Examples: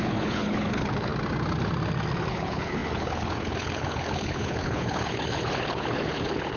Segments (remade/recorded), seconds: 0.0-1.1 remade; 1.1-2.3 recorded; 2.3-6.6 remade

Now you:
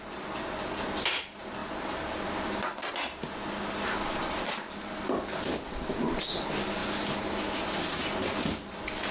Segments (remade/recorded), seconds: 0.0-9.1 recorded

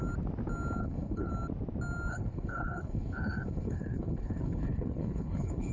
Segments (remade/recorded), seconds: 0.0-0.8 recorded; 0.8-1.3 remade; 1.3-2.1 recorded; 2.1-5.7 remade